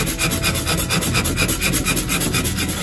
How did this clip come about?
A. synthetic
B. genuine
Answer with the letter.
B